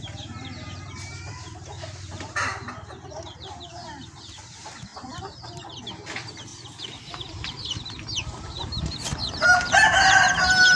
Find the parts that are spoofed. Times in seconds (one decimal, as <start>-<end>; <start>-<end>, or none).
0.0-10.8

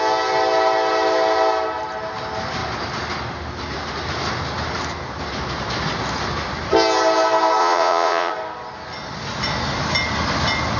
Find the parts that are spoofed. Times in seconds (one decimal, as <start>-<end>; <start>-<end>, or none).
7.6-8.3

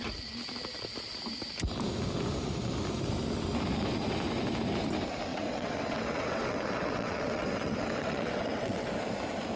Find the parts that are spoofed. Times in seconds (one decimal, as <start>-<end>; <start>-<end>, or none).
5.3-8.9

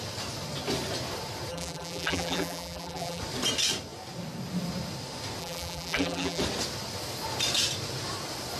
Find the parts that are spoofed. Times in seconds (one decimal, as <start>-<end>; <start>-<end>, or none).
1.5-3.2; 5.4-6.4

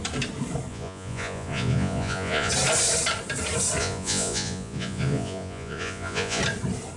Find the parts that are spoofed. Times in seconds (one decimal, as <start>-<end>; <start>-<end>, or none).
0.7-2.5; 3.8-6.4

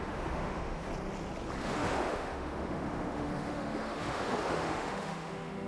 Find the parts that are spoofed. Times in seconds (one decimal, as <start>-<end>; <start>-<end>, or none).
0.0-0.9; 1.6-5.7

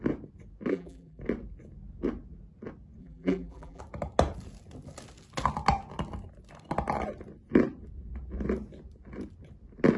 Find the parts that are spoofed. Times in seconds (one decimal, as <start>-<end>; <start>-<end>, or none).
0.7-1.2; 3.0-3.8